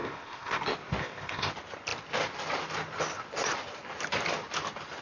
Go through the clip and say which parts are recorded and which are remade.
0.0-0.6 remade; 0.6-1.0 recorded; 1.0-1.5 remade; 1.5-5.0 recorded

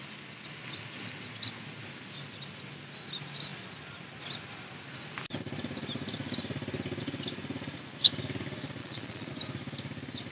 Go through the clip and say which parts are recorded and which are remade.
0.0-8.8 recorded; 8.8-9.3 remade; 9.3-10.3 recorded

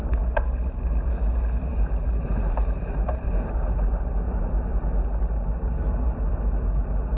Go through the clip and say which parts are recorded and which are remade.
0.0-1.7 recorded; 1.7-4.1 remade; 4.1-7.2 recorded

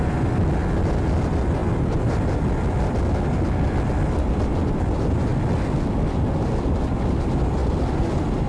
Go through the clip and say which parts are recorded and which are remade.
0.0-8.5 recorded